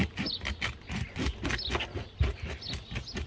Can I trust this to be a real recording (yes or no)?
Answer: yes